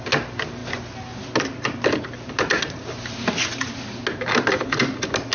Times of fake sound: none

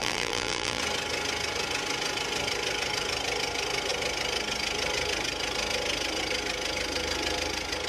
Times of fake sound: 0.0-0.8 (vocoder, BigVGAN v2)

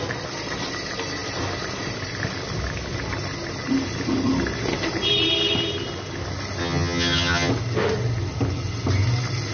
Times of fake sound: 6.6-7.5 (vocoder, HiFi-GAN)

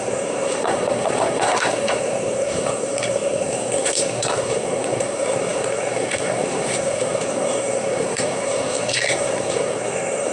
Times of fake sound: 0.0-10.3 (codec, SNAC)

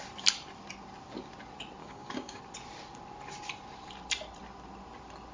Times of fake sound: 1.8-2.4 (codec, DAC)